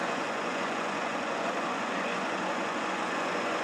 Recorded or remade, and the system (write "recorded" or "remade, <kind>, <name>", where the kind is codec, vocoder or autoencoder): remade, vocoder, Vocos